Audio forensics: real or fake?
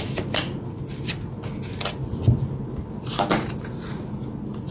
real